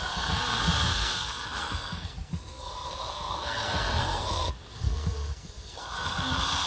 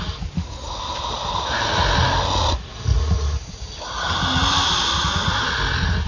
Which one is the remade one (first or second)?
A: first